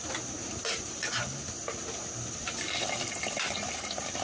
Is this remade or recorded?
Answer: recorded